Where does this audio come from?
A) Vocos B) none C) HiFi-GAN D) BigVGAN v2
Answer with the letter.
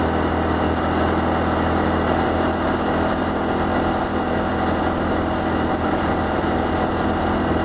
B